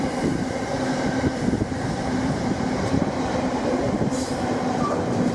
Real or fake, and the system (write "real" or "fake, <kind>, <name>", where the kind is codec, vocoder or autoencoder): fake, vocoder, BigVGAN v2